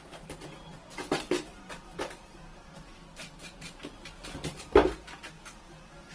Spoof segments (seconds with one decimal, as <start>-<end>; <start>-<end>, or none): 0.7-4.2